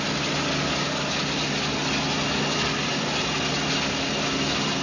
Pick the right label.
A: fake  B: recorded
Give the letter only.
B